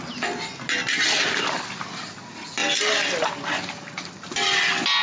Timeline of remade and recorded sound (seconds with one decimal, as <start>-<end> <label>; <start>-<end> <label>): 0.0-5.0 recorded